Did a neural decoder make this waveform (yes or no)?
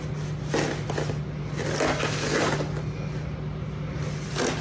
no